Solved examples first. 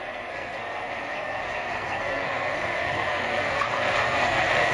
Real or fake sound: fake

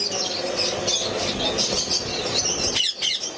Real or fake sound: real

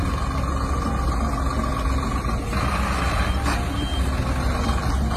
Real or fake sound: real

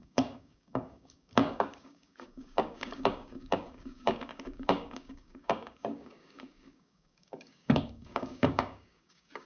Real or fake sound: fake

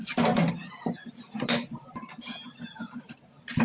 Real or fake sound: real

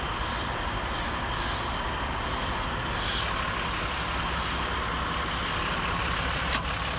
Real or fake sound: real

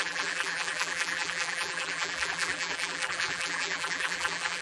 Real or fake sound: fake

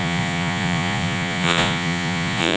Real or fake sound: fake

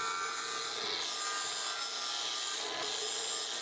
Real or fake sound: real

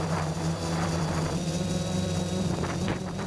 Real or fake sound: fake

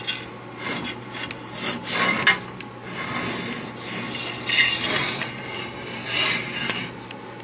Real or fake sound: real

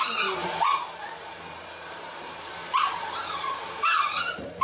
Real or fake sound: fake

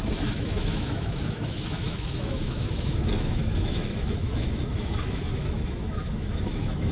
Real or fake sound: fake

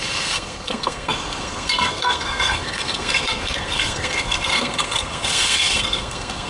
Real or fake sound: fake